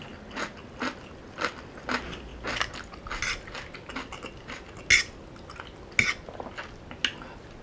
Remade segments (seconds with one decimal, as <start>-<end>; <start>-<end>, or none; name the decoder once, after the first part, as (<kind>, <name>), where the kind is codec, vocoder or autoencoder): none